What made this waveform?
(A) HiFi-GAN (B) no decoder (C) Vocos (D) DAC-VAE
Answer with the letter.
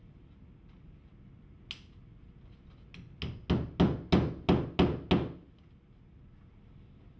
B